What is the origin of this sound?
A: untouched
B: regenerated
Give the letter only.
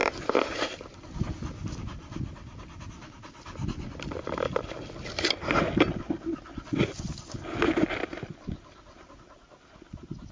A